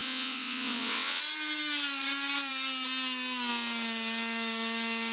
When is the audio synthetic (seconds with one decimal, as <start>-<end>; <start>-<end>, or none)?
0.0-1.2